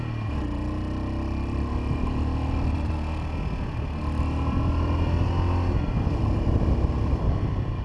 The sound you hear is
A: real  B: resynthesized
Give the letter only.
A